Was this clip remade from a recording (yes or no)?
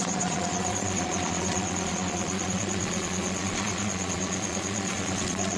yes